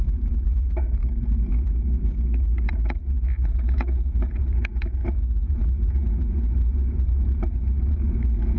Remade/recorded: remade